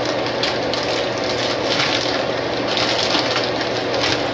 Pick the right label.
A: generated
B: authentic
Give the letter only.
B